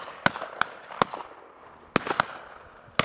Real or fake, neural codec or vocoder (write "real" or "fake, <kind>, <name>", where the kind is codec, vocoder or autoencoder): real